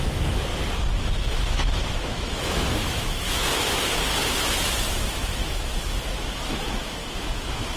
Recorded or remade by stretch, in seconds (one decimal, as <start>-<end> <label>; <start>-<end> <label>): 0.0-0.5 remade; 0.5-1.3 recorded; 1.3-7.8 remade